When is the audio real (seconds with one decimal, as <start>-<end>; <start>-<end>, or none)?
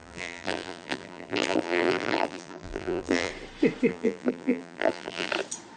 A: 3.3-3.9; 5.3-5.8